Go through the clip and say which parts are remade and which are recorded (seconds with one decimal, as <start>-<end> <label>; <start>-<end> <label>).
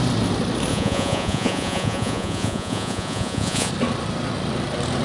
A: 0.0-0.7 recorded; 0.7-3.7 remade; 3.7-5.0 recorded